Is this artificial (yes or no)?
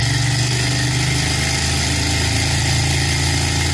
no